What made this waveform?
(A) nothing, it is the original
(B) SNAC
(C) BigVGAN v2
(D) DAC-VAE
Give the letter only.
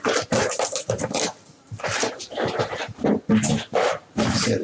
C